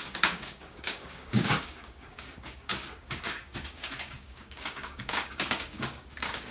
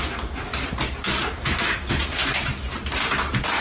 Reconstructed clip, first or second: first